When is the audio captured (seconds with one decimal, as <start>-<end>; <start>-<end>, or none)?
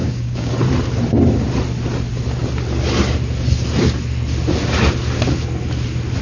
0.5-6.2